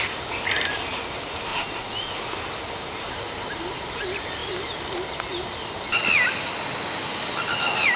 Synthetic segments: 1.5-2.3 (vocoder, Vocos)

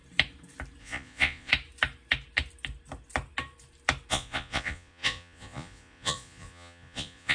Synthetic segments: 0.8-1.5 (vocoder, Vocos); 4.1-7.3

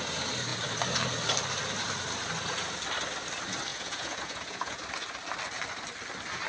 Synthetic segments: 3.7-4.8 (vocoder, Vocos)